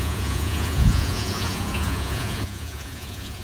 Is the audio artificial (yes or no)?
yes